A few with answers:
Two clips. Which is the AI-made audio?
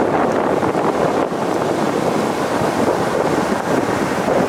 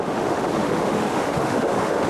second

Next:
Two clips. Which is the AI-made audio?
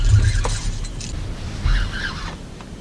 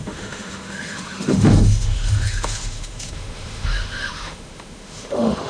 second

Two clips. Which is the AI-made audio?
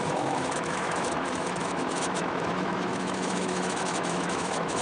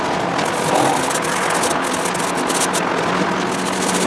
first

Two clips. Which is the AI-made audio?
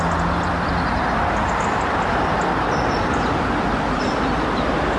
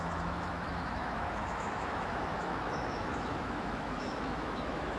second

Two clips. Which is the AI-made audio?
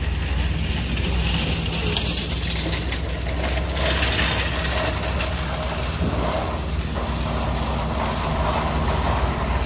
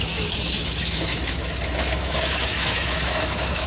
second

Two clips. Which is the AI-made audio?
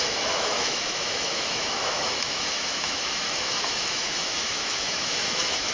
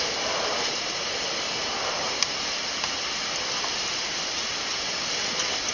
first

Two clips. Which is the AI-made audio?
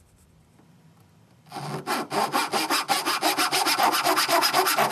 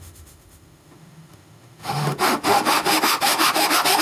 second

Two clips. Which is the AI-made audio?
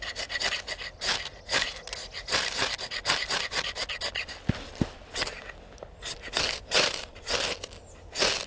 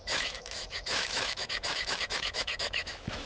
second